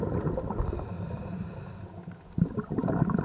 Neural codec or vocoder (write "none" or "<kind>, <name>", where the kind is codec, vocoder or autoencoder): vocoder, BigVGAN v2